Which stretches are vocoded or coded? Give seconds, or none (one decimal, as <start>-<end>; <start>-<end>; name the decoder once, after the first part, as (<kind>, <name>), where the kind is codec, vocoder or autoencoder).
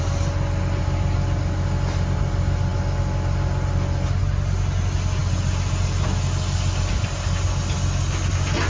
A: none